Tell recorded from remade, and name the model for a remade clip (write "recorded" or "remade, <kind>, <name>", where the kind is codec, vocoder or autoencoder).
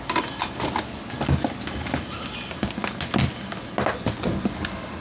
recorded